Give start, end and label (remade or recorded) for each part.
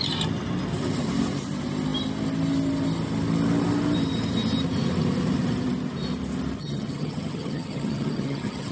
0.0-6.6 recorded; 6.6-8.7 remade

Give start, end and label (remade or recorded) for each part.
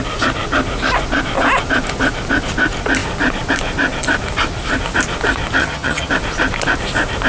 0.0-5.6 recorded; 5.6-6.1 remade; 6.1-7.3 recorded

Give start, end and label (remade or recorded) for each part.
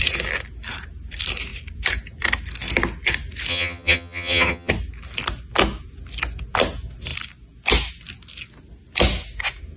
0.0-3.5 recorded; 3.5-4.7 remade; 4.7-9.8 recorded